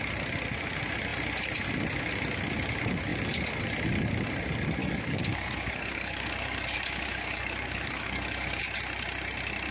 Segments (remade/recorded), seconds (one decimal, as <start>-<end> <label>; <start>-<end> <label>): 0.0-4.8 recorded; 4.8-8.6 remade; 8.6-9.7 recorded